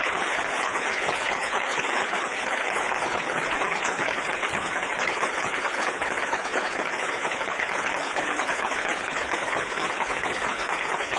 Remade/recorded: remade